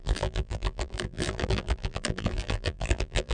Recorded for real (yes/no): no